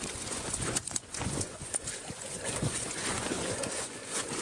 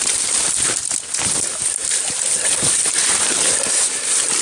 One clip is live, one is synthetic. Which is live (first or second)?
second